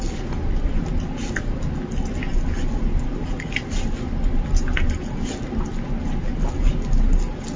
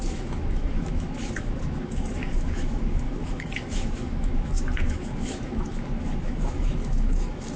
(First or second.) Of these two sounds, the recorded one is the first